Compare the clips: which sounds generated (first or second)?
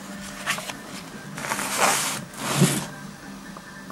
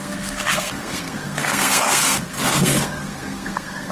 second